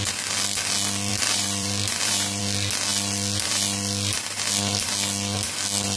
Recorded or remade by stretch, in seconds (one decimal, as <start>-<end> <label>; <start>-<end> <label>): 0.0-1.1 recorded; 1.1-2.4 remade; 2.4-2.9 recorded; 2.9-4.6 remade; 4.6-6.0 recorded